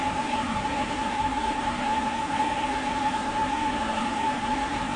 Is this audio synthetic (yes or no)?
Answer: yes